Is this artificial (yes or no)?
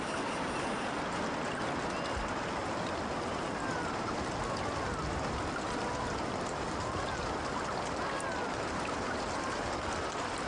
no